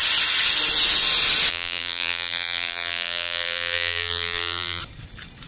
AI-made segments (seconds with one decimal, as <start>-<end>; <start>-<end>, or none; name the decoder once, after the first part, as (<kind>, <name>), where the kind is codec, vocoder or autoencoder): 1.5-4.8 (vocoder, BigVGAN v2)

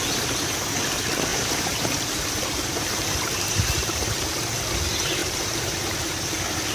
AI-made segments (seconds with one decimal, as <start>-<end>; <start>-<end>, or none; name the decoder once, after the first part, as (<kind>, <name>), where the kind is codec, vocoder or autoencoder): 1.3-4.4 (vocoder, BigVGAN v2); 5.2-6.3

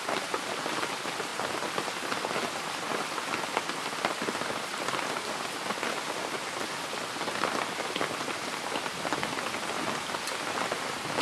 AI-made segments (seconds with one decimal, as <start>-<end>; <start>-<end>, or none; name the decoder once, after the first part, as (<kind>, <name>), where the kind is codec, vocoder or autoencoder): none

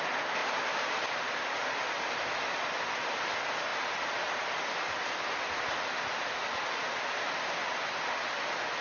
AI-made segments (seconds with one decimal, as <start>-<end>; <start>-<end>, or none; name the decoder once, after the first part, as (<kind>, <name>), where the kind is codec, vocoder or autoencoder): 0.4-3.2 (vocoder, BigVGAN v2); 3.7-5.2

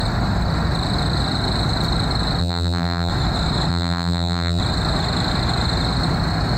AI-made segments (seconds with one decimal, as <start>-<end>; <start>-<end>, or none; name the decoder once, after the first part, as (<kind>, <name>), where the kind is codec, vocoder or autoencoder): 2.4-3.1 (vocoder, BigVGAN v2); 3.7-4.6

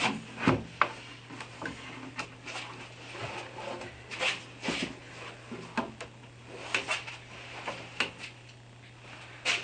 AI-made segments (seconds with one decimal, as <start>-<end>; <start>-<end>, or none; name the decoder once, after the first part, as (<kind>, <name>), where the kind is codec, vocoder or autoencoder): none